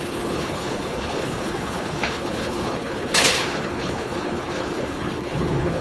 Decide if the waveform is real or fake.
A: fake